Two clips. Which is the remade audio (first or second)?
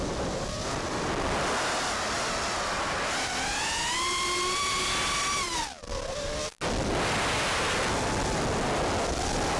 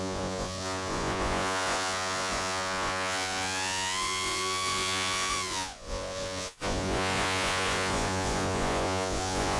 second